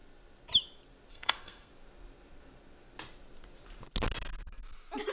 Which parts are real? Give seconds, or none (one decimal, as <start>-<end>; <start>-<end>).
0.0-1.1; 1.7-5.1

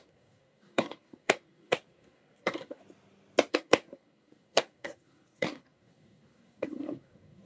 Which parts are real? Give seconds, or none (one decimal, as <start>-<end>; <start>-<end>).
2.8-3.5

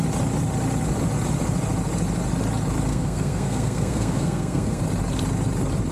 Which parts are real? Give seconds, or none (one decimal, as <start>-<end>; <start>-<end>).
0.0-2.9; 4.8-5.9

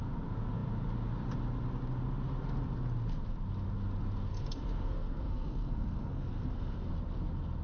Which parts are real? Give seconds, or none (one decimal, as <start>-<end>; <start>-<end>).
0.0-4.3; 6.9-7.6

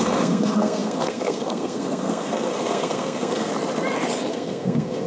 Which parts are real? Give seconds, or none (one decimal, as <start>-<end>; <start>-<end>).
3.5-4.3

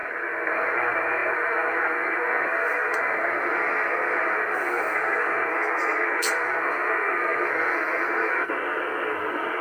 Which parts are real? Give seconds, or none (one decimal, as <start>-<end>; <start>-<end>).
none

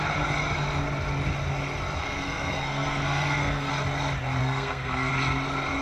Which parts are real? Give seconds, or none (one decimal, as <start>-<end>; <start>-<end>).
0.0-2.0; 3.7-4.4; 5.1-5.8

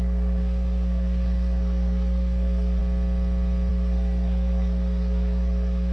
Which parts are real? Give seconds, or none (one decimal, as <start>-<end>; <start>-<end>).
2.8-3.7